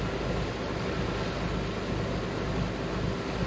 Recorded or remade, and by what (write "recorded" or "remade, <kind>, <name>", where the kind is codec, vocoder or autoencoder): recorded